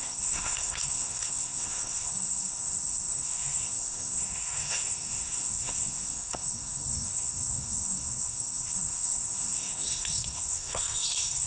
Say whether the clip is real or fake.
fake